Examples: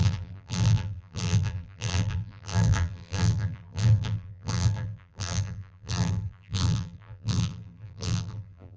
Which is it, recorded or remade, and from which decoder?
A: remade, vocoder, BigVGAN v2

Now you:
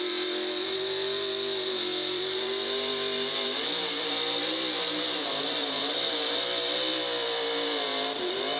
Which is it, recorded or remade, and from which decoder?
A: remade, vocoder, BigVGAN v2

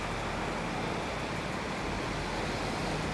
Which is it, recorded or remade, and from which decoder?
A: recorded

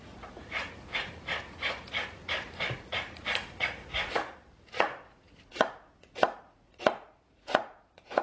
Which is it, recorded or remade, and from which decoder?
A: remade, vocoder, Vocos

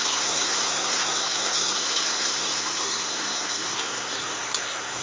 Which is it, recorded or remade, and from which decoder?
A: remade, codec, SNAC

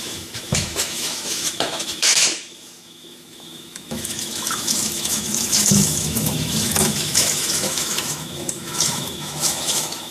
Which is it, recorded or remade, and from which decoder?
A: remade, autoencoder, DAC-VAE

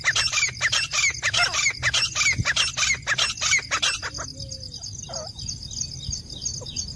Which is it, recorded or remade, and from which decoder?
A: recorded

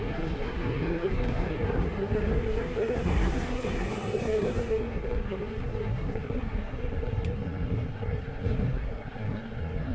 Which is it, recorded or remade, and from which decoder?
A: remade, codec, SNAC